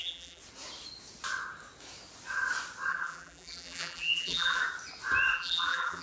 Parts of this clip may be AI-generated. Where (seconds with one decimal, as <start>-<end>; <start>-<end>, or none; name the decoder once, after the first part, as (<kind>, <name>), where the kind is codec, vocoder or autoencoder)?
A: 0.0-0.4 (vocoder, BigVGAN v2); 2.9-4.6; 5.3-6.0